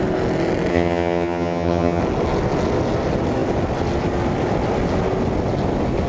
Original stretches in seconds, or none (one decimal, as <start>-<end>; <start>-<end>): 0.0-0.7; 2.0-6.1